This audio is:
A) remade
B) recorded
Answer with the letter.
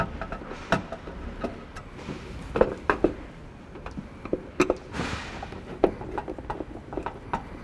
B